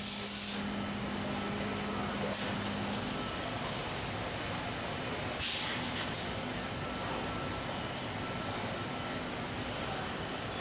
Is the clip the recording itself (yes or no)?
yes